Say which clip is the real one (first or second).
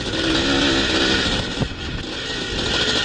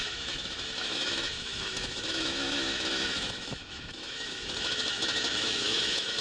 first